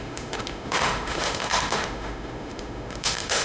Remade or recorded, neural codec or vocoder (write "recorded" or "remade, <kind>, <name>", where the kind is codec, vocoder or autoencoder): remade, autoencoder, DAC-VAE